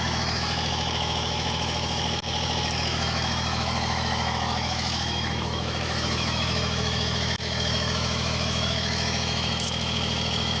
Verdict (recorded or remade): remade